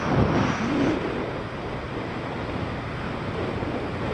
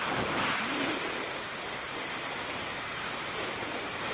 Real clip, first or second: first